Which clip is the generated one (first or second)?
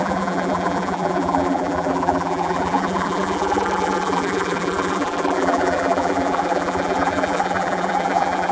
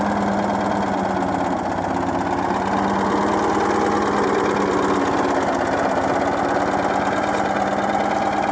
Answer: first